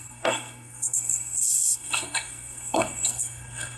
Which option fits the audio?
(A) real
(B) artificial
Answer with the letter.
B